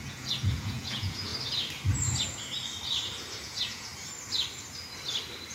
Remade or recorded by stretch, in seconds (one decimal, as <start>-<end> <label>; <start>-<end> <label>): 0.0-1.3 remade; 1.3-3.4 recorded; 3.4-3.9 remade; 3.9-5.5 recorded